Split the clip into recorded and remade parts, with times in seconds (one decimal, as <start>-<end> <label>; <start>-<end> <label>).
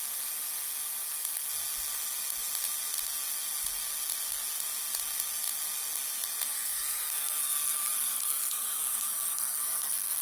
0.0-6.5 recorded; 6.5-10.2 remade